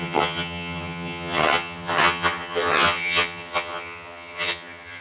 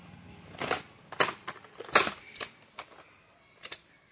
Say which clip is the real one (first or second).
second